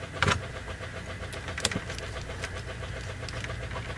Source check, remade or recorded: recorded